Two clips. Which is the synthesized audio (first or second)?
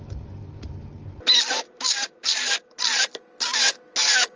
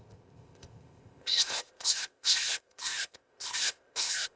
second